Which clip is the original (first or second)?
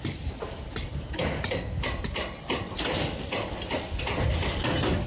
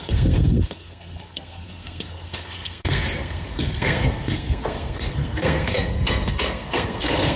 first